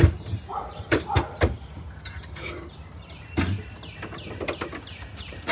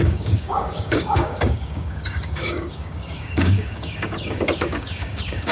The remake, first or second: second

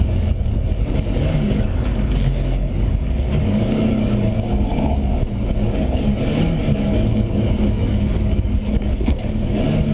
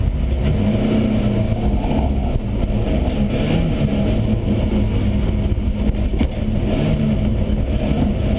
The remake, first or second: first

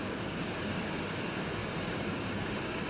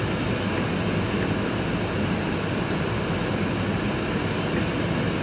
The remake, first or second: first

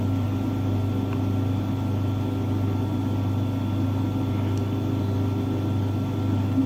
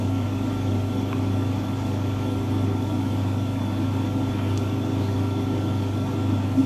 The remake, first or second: second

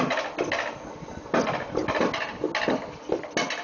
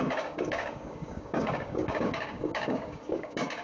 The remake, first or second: second